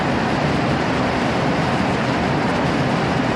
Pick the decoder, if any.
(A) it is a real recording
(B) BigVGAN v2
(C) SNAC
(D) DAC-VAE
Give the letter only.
B